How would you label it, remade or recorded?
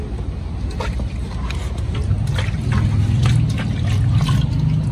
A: recorded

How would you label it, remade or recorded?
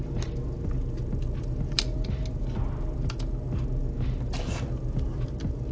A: recorded